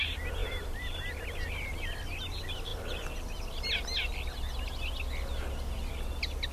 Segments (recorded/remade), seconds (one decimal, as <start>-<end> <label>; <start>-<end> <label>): 0.0-0.4 recorded; 0.4-1.2 remade; 1.2-6.5 recorded